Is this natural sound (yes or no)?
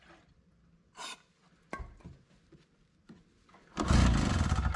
yes